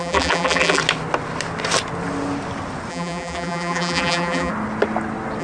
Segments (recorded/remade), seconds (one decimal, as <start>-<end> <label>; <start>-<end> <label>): 0.0-0.8 remade; 0.8-2.9 recorded; 2.9-4.5 remade; 4.5-5.4 recorded